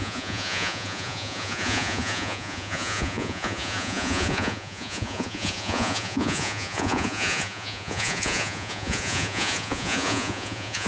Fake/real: fake